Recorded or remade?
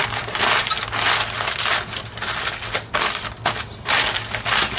recorded